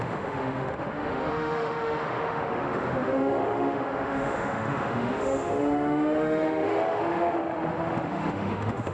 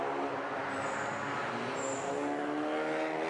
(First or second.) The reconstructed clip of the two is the first